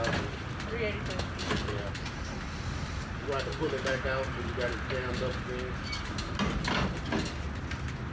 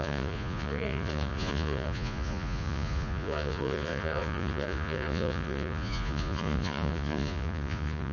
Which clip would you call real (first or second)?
first